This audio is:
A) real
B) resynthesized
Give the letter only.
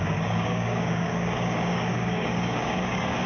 B